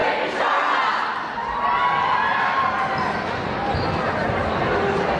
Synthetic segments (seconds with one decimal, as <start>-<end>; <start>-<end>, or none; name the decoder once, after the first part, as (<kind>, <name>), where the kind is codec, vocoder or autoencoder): none